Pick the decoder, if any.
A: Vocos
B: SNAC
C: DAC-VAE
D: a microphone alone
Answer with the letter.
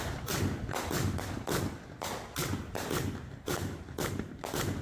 D